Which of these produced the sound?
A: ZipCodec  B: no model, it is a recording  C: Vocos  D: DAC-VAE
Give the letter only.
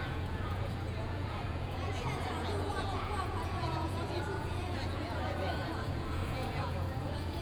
C